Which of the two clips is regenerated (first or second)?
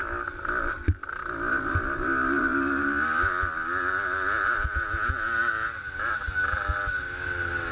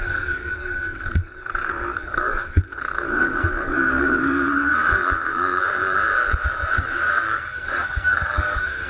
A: second